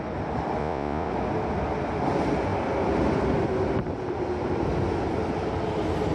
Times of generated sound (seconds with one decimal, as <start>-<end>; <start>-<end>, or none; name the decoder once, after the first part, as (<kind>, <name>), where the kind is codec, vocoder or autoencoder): 0.6-1.1 (vocoder, Vocos)